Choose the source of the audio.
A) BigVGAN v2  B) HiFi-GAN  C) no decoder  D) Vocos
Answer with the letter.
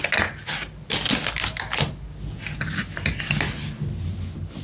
C